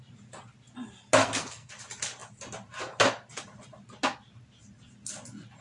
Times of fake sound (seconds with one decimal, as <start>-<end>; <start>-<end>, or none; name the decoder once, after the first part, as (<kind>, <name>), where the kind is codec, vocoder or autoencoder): 1.2-1.7 (codec, SNAC)